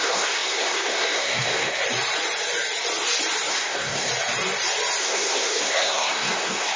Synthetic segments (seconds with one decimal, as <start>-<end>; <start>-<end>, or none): 0.0-1.8; 3.5-4.1; 5.0-6.8